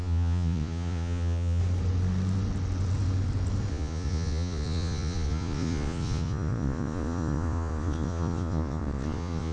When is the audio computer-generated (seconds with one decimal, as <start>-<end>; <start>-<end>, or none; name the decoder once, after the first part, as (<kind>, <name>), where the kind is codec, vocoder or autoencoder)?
0.0-1.6 (vocoder, Vocos); 3.7-9.5